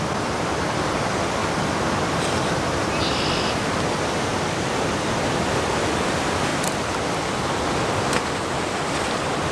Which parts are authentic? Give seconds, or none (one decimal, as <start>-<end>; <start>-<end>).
0.0-1.4; 5.1-9.5